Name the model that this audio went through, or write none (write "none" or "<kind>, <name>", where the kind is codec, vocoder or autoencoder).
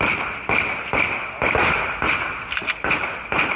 none